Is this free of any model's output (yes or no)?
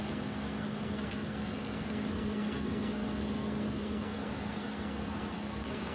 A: no